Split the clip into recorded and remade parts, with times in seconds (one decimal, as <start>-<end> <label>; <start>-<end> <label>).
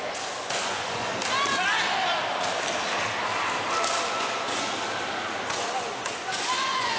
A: 0.0-1.2 remade; 1.2-4.1 recorded; 4.1-4.7 remade; 4.7-5.4 recorded; 5.4-7.0 remade